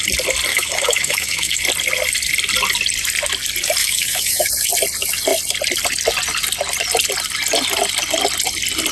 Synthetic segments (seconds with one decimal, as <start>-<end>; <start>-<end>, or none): 0.5-1.6; 3.8-4.5